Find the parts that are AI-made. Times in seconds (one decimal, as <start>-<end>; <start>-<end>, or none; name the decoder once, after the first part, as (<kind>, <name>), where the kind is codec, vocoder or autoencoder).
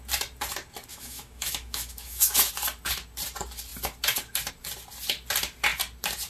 0.9-2.5 (autoencoder, DAC-VAE)